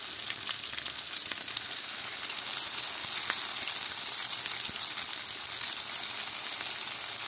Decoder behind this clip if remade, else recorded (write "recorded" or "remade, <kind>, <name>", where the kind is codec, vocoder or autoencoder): recorded